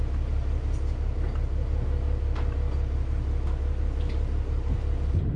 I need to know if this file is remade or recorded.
recorded